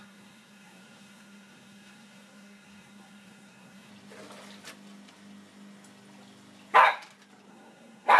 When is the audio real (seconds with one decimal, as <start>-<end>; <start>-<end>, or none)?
3.9-7.5